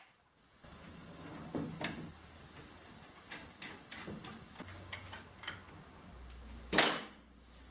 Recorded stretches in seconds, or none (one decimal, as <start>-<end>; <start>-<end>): 1.3-4.2; 4.7-7.0